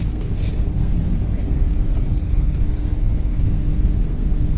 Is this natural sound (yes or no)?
no